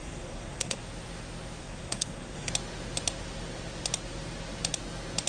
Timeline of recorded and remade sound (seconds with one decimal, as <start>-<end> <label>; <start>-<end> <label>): 0.0-0.8 remade; 0.8-1.6 recorded; 1.6-2.5 remade; 2.5-5.3 recorded